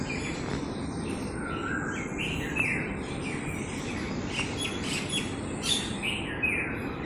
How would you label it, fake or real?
real